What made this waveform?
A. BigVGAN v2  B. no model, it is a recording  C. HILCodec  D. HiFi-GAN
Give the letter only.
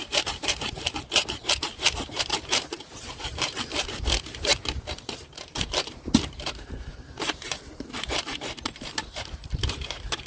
A